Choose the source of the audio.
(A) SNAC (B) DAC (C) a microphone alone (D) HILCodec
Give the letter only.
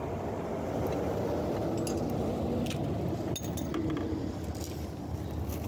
C